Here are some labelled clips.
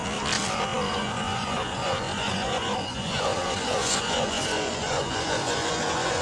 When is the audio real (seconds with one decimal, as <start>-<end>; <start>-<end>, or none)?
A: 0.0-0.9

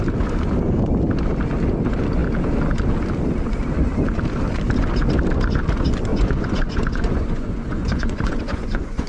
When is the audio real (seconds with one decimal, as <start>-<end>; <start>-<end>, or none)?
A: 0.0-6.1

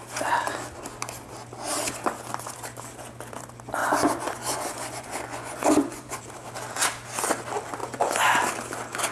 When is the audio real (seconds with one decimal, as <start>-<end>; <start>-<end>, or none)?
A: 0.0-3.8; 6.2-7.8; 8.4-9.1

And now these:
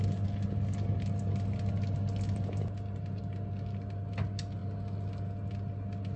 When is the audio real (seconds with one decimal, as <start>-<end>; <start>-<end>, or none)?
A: 0.0-6.2

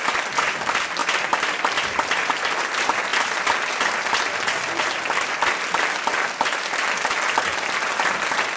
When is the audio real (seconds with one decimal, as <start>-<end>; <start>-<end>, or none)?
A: 0.0-8.6

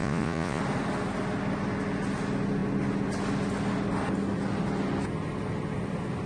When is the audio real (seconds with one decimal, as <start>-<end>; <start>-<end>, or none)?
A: 0.6-6.3

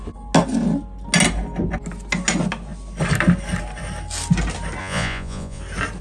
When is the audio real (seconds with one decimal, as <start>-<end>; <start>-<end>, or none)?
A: 0.0-4.8; 5.6-6.0

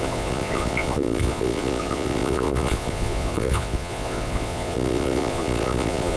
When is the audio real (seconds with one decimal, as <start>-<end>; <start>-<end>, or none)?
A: none